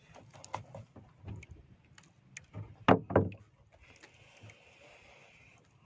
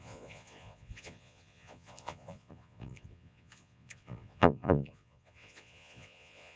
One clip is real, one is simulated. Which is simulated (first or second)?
second